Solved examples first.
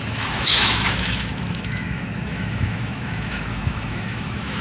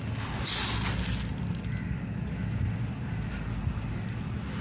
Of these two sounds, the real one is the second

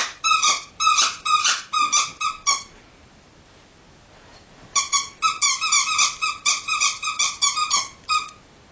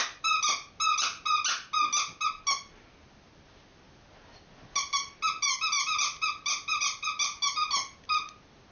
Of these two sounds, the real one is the second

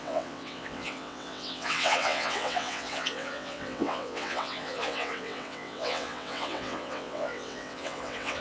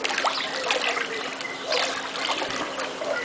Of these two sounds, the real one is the second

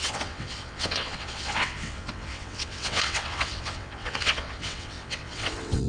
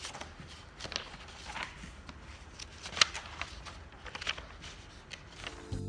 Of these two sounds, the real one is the second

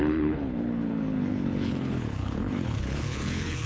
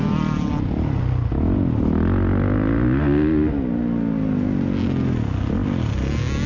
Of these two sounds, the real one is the second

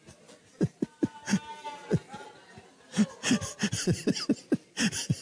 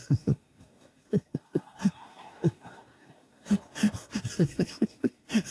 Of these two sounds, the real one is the first